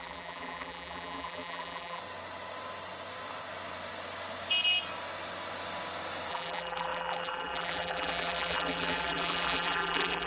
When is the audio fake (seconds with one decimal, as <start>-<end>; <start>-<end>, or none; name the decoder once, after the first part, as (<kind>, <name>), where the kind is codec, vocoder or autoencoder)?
0.0-2.0 (vocoder, BigVGAN v2); 6.3-10.3